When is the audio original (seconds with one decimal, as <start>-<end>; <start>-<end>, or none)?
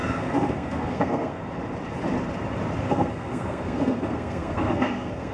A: 1.4-2.8